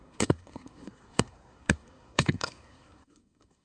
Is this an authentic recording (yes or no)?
no